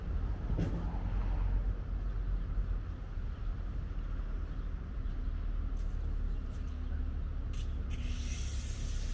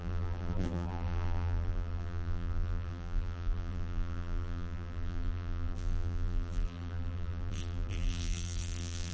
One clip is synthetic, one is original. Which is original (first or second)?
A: first